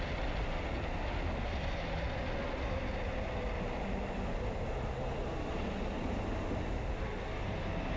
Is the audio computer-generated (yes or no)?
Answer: no